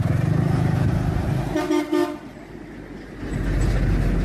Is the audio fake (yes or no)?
no